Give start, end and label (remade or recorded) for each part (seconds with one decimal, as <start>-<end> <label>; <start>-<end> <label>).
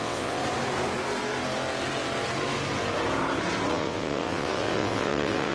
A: 0.0-0.4 remade; 0.4-3.7 recorded; 3.7-5.5 remade